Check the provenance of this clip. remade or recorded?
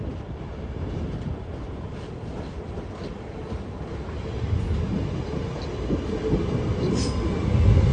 recorded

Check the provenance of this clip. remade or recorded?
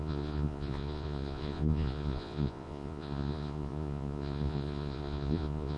remade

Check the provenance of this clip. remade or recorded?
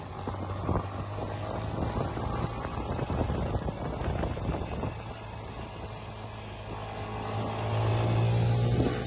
recorded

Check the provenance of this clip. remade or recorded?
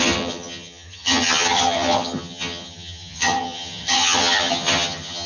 remade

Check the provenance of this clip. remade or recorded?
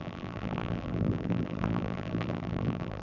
remade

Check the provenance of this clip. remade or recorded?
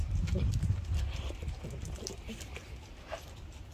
recorded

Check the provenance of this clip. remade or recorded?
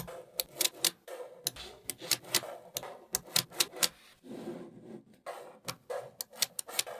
recorded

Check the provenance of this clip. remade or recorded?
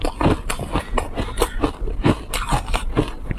recorded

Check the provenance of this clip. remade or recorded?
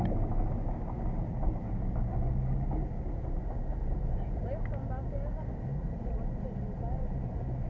recorded